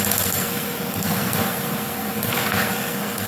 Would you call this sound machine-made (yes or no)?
yes